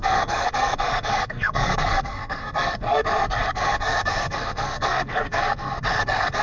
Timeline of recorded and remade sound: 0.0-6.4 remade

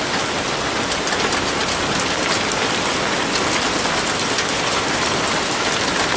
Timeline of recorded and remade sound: 0.0-6.2 recorded